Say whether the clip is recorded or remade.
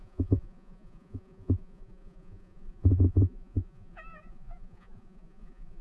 remade